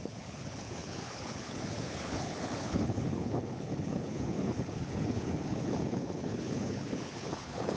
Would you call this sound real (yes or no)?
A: no